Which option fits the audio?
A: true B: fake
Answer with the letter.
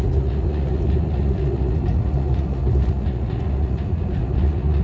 B